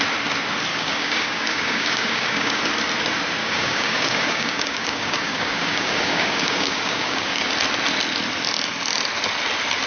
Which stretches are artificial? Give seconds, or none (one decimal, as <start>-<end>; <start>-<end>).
0.7-2.6; 3.4-7.5